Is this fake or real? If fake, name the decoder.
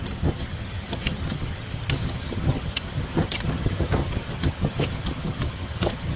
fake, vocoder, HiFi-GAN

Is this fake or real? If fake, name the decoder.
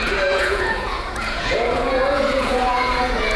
fake, vocoder, Vocos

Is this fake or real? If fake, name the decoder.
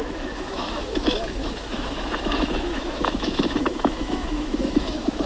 fake, autoencoder, DAC-VAE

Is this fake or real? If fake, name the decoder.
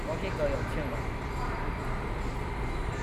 real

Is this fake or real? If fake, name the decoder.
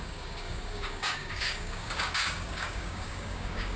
fake, codec, DAC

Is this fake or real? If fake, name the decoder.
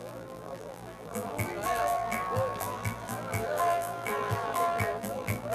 fake, vocoder, BigVGAN v2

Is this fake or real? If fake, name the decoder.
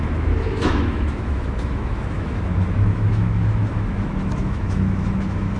fake, autoencoder, DAC-VAE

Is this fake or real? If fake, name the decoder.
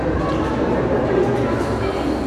real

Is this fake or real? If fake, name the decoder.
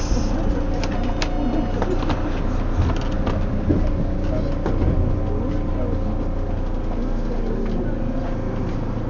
real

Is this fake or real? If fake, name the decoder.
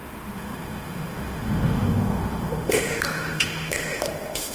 fake, autoencoder, DAC-VAE